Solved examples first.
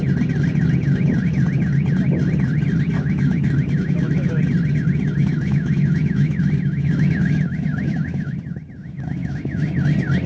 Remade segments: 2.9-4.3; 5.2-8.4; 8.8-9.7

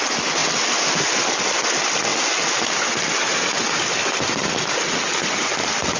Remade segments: none

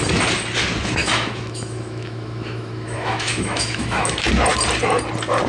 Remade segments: 1.0-4.3

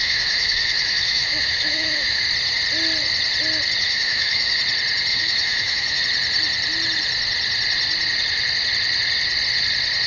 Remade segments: 0.0-2.2; 3.8-4.6; 5.1-6.0

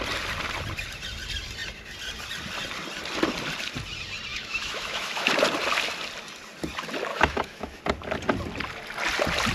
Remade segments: 4.3-5.3; 7.1-7.8

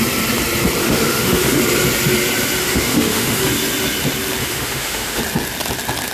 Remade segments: 0.8-1.6; 2.6-3.4; 4.4-5.2

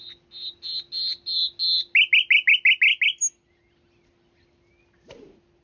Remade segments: none

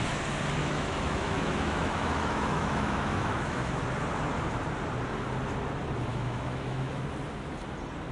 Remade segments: 0.6-3.8; 6.1-7.0